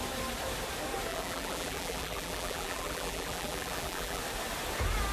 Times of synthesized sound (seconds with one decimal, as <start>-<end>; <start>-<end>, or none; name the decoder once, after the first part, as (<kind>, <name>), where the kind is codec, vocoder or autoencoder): 1.1-4.2 (vocoder, BigVGAN v2)